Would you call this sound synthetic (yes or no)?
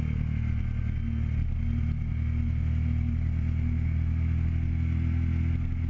no